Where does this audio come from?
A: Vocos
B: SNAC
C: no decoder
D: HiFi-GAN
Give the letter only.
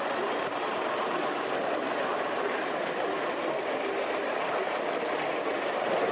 C